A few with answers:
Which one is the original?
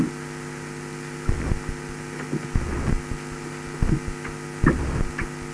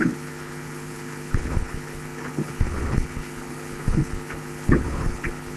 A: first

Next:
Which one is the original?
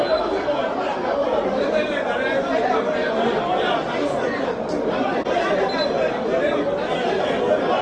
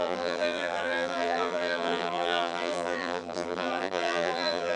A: first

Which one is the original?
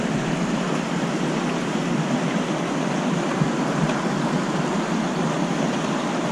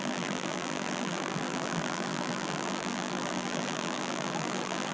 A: first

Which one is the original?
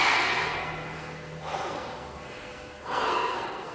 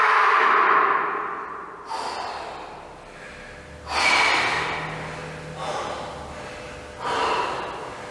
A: second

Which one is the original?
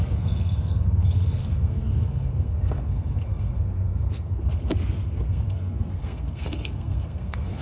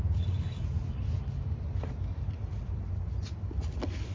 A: second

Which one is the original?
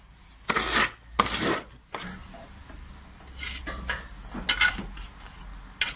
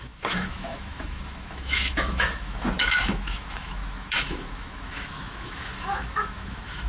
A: first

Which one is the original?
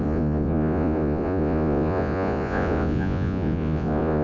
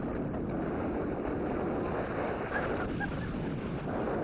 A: second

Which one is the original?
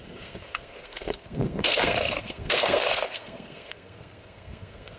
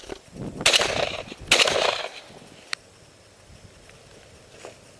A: second